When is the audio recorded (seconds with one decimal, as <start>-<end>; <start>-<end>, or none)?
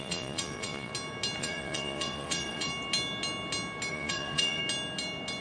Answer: 0.9-1.4; 2.7-3.9; 4.6-5.4